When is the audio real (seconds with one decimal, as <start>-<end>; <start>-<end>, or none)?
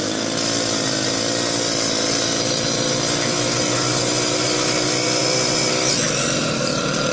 0.0-7.1